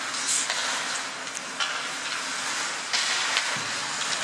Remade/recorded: recorded